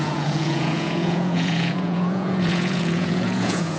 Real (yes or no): no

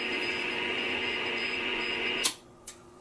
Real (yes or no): no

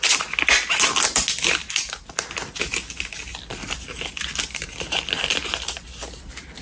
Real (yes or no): yes